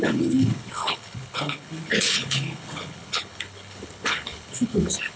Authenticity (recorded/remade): remade